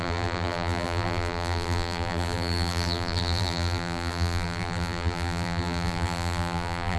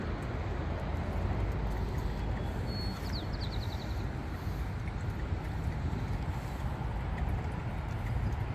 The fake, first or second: first